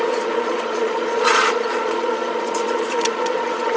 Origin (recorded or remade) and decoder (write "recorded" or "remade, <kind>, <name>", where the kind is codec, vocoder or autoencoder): remade, vocoder, Vocos